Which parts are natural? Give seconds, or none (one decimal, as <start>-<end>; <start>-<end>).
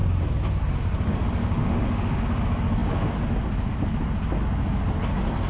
0.0-1.4; 2.2-5.5